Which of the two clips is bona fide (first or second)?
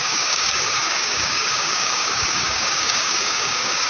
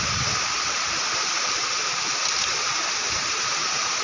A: second